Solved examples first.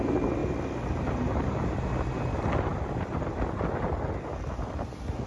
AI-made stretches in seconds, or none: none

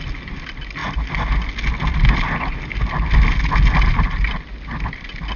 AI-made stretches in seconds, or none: none

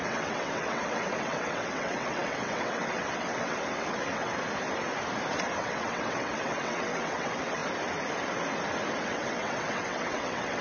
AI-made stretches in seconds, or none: 0.0-4.3 (vocoder, WaveNeXt); 5.6-7.6; 9.0-10.6

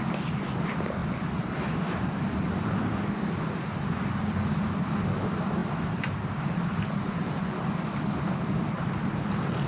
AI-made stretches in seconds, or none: none

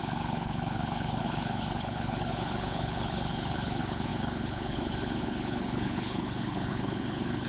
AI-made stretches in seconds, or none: 0.0-7.5 (codec, HILCodec)

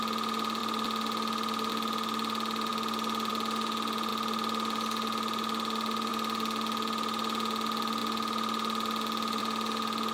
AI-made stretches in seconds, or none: none

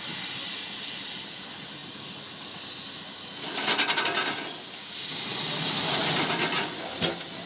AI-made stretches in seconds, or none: none

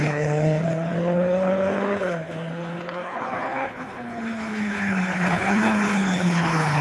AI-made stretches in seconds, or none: 0.0-6.8 (codec, HILCodec)